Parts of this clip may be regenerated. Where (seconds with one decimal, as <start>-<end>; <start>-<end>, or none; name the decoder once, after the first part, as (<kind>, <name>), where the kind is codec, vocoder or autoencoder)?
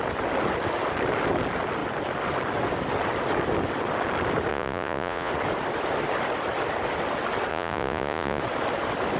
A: 4.5-5.3 (vocoder, Vocos); 7.5-8.4